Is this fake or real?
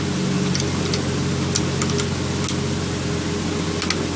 real